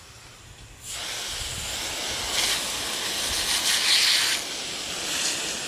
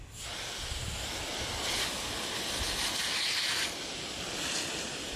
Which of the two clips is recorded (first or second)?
first